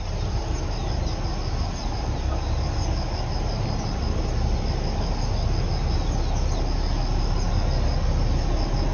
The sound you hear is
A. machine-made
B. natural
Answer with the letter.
B